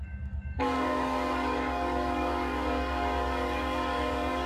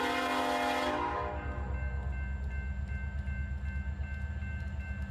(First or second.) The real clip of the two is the second